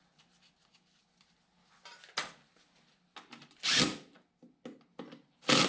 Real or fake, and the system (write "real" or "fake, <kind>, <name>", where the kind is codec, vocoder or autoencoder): real